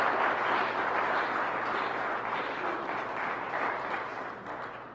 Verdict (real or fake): real